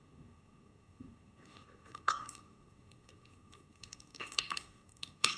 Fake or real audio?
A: fake